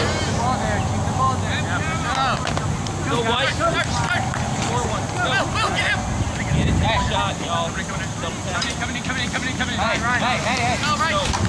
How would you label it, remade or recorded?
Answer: recorded